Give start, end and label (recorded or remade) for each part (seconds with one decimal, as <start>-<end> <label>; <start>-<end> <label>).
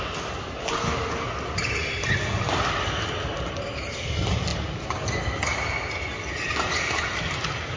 0.0-7.8 recorded